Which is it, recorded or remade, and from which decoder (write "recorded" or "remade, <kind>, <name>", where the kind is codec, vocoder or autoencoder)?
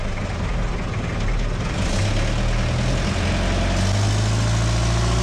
recorded